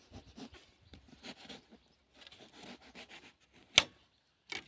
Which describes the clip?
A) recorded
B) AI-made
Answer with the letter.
A